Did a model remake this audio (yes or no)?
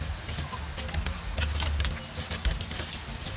no